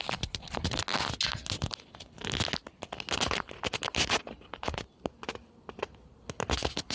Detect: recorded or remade recorded